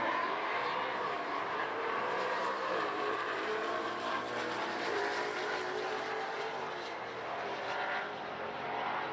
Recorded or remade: remade